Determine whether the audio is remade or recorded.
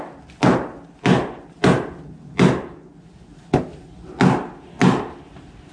recorded